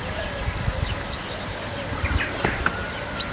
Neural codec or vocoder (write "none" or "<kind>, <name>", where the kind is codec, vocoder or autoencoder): none